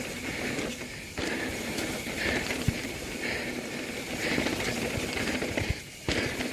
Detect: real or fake real